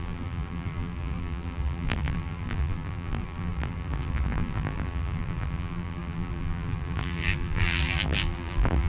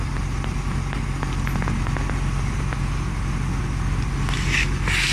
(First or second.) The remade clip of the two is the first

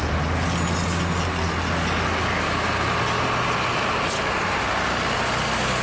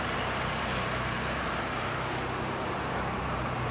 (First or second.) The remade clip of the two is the second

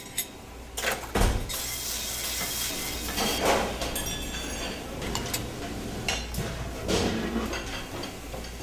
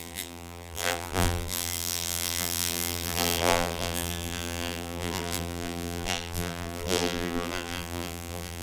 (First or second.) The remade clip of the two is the second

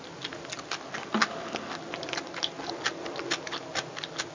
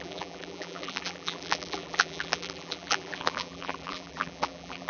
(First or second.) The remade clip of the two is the second